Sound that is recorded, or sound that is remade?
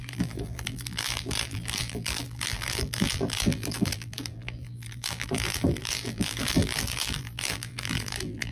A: remade